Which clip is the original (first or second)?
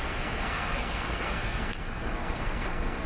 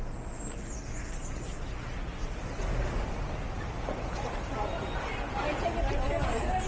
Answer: second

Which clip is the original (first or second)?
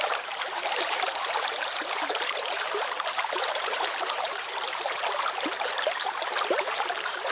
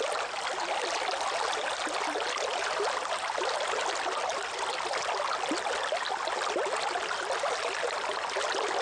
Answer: second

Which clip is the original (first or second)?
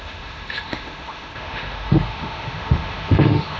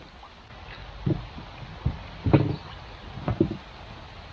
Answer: second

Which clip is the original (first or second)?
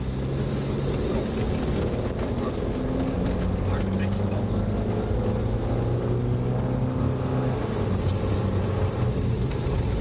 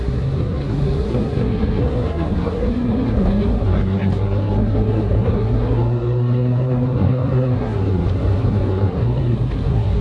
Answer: first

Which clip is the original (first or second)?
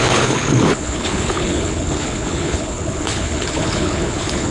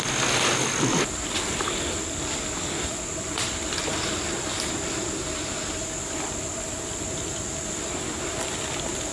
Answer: second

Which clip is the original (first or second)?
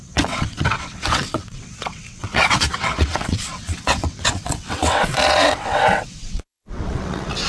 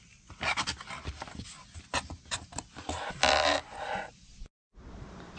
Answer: second